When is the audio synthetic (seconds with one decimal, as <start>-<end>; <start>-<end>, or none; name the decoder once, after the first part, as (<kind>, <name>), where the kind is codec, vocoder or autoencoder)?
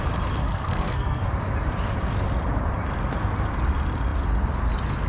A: 0.4-1.3 (codec, SNAC)